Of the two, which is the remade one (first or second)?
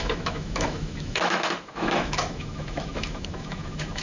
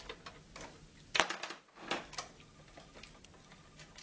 first